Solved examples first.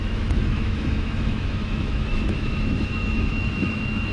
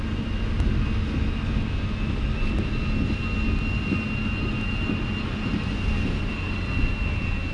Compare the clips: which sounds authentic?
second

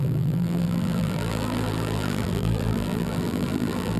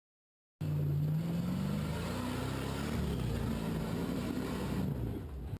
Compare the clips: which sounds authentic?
second